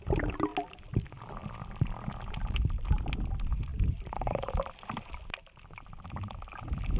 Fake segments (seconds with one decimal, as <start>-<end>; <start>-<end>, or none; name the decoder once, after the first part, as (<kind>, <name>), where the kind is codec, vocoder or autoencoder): 3.7-4.7 (vocoder, BigVGAN v2)